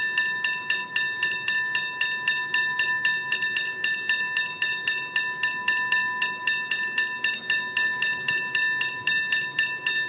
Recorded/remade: recorded